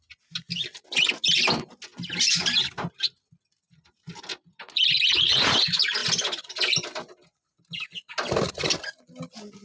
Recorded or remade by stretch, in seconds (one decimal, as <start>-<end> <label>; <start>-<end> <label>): 0.0-9.6 recorded